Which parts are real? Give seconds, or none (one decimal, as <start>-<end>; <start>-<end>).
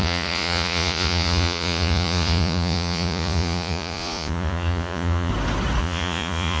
5.3-5.8